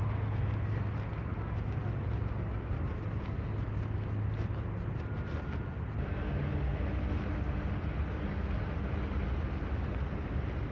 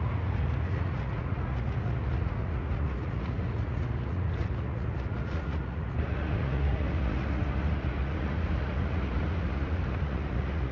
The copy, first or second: second